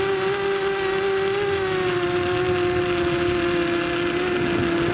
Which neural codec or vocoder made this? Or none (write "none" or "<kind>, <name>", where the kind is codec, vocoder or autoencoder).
none